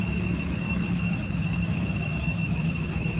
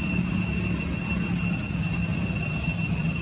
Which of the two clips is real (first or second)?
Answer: second